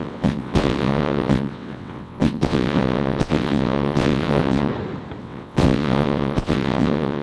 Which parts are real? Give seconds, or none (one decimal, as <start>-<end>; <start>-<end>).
4.7-5.2